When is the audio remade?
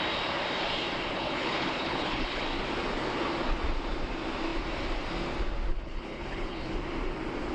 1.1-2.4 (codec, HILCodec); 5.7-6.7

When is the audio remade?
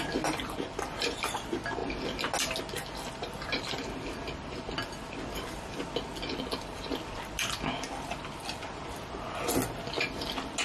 none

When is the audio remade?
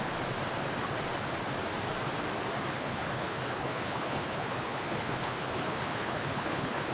2.7-6.9 (codec, HILCodec)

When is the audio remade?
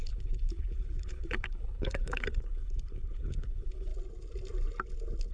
0.0-3.9 (codec, HILCodec)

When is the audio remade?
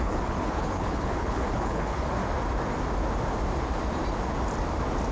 0.0-2.2 (codec, HILCodec)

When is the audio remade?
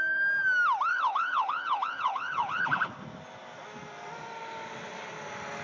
0.9-2.9 (codec, HILCodec)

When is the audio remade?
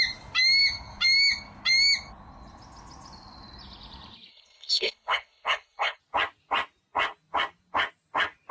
4.3-6.0 (codec, HILCodec)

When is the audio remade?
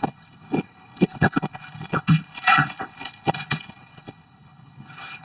0.0-5.2 (codec, HILCodec)